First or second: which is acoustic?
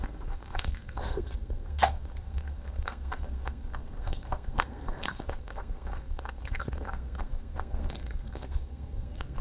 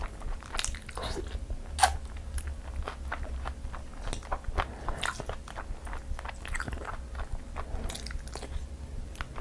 second